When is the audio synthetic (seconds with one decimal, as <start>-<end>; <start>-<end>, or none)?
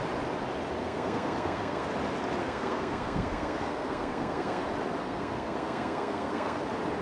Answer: 0.8-1.9; 2.4-4.6; 5.0-6.6